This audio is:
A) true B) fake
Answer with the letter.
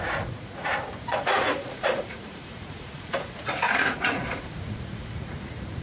B